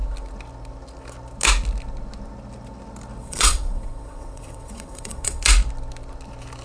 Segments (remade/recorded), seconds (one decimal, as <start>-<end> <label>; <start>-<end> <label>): 0.0-3.2 recorded; 3.2-5.4 remade; 5.4-6.6 recorded